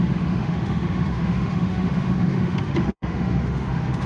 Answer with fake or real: fake